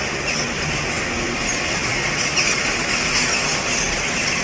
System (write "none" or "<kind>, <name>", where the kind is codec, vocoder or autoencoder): none